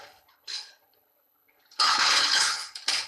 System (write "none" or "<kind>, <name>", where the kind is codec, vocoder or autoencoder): codec, HILCodec